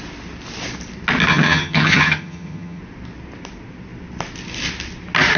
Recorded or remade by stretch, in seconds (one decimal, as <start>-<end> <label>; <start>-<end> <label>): 0.0-1.3 recorded; 1.3-2.8 remade; 2.8-5.4 recorded

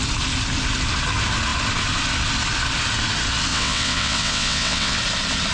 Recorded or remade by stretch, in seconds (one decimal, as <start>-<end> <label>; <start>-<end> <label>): 0.0-3.5 recorded; 3.5-5.0 remade; 5.0-5.5 recorded

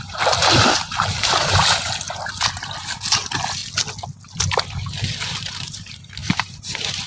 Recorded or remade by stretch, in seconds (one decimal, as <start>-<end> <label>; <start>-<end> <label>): 0.0-3.6 remade; 3.6-5.3 recorded; 5.3-7.1 remade

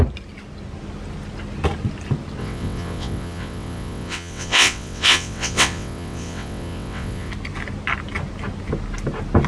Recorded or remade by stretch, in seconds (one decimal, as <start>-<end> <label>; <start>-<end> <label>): 0.0-2.4 recorded; 2.4-7.3 remade; 7.3-9.5 recorded

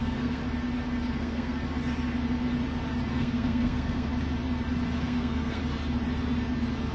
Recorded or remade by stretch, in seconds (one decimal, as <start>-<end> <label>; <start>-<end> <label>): 0.0-0.4 remade; 0.4-1.2 recorded; 1.2-1.6 remade; 1.6-3.1 recorded; 3.1-4.1 remade; 4.1-5.0 recorded; 5.0-5.6 remade; 5.6-6.9 recorded

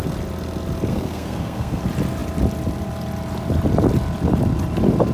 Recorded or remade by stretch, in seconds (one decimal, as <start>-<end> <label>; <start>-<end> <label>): 0.0-0.9 recorded; 0.9-1.8 remade; 1.8-5.1 recorded

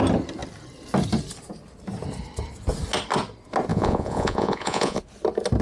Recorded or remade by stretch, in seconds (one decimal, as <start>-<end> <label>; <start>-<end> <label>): 0.0-3.7 recorded; 3.7-5.0 remade; 5.0-5.6 recorded

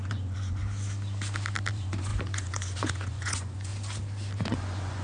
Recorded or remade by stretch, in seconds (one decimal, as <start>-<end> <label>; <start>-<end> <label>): 0.0-0.6 remade; 0.6-1.7 recorded; 1.7-3.7 remade; 3.7-4.4 recorded; 4.4-5.0 remade